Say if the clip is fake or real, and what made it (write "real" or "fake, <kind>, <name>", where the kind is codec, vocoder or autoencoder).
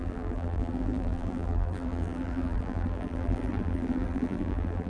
fake, vocoder, BigVGAN v2